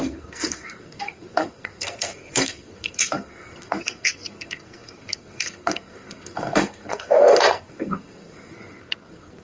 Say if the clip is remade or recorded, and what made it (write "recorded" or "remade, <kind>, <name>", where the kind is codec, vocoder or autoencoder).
remade, codec, SNAC